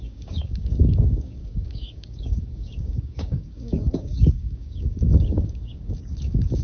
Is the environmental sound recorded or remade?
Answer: remade